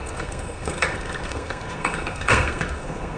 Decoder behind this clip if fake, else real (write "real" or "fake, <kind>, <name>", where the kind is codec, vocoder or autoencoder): fake, codec, SNAC